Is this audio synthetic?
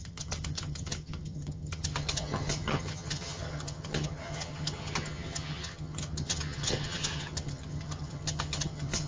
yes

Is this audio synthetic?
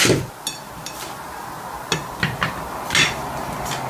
no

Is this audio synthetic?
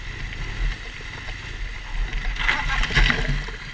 no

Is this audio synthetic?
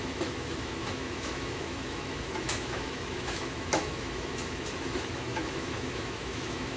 yes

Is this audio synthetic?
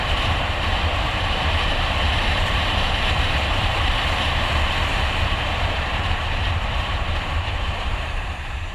yes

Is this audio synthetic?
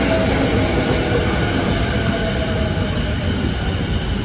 no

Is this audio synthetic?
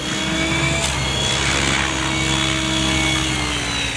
no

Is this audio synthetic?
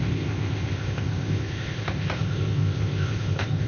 yes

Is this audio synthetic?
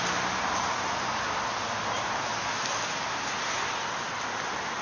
no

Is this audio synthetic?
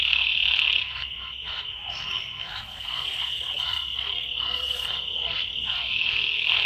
yes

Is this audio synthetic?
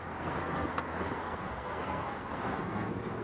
yes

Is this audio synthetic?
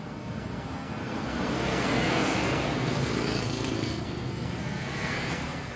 yes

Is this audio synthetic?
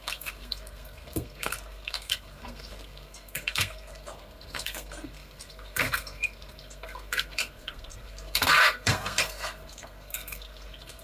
yes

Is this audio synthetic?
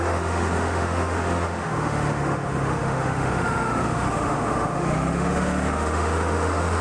yes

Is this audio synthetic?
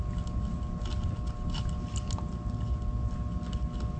no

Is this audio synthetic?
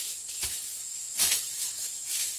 yes